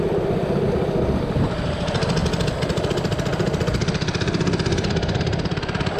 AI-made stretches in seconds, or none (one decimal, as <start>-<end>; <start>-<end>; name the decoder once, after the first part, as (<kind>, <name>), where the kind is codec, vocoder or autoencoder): 2.2-6.0 (vocoder, BigVGAN v2)